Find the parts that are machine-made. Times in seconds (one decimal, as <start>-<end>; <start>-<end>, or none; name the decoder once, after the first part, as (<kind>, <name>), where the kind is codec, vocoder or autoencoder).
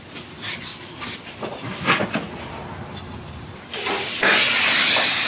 0.7-1.8 (vocoder, BigVGAN v2); 2.8-4.3